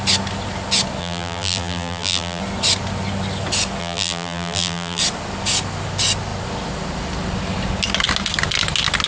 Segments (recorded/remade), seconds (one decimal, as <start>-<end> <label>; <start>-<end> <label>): 0.0-1.0 recorded; 1.0-2.4 remade; 2.4-3.8 recorded; 3.8-5.0 remade; 5.0-9.1 recorded

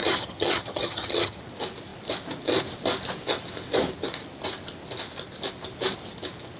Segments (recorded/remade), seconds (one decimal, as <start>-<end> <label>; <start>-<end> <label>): 0.0-1.4 remade; 1.4-6.6 recorded

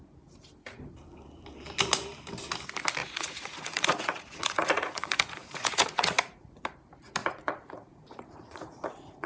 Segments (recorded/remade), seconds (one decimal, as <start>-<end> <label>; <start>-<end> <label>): 0.0-3.0 recorded; 3.0-6.6 remade; 6.6-7.2 recorded; 7.2-9.3 remade

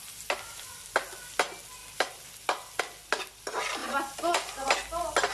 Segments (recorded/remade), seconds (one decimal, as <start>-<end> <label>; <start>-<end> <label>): 0.0-1.8 recorded; 1.8-2.8 remade; 2.8-3.8 recorded; 3.8-4.3 remade; 4.3-5.3 recorded

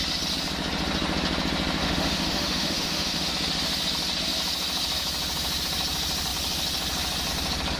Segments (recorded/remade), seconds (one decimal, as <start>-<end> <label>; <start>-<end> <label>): 0.0-1.8 recorded; 1.8-3.3 remade; 3.3-7.8 recorded

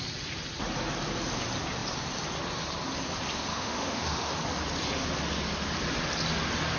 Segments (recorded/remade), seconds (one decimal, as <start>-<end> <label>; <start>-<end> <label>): 0.0-3.5 recorded; 3.5-4.3 remade; 4.3-6.8 recorded

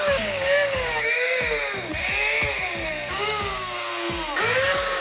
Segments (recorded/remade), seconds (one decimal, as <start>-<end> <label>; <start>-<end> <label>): 0.0-3.9 remade; 3.9-4.4 recorded; 4.4-5.0 remade